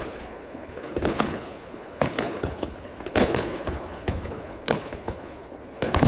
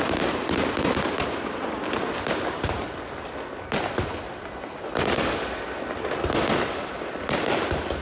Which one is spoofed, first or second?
first